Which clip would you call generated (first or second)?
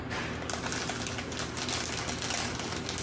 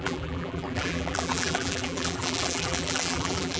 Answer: second